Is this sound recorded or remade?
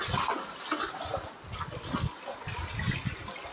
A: recorded